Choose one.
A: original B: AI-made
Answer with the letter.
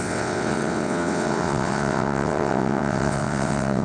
B